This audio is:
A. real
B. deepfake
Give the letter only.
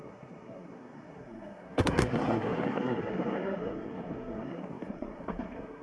B